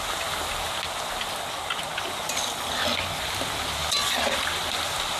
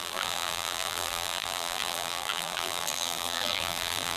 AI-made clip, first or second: second